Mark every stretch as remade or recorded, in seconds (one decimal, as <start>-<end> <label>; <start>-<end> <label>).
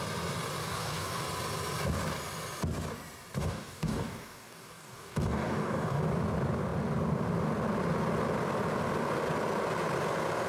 0.0-0.6 recorded; 0.6-1.2 remade; 1.2-3.4 recorded; 3.4-6.0 remade; 6.0-10.5 recorded